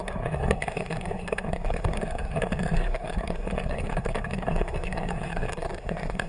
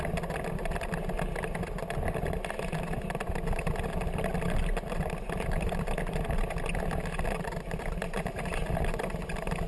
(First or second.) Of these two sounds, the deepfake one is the first